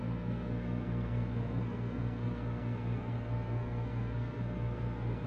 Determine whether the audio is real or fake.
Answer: fake